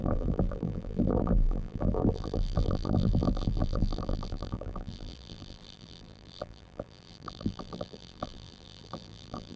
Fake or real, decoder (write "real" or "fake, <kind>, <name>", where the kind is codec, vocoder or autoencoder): fake, vocoder, BigVGAN v2